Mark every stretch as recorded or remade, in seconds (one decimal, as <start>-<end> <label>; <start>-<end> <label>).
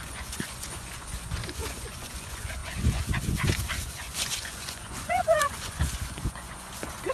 0.0-7.1 remade